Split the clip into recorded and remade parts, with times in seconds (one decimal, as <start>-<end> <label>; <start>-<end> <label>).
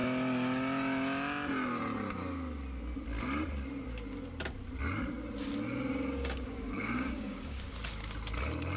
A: 0.0-5.9 recorded; 5.9-7.7 remade; 7.7-8.8 recorded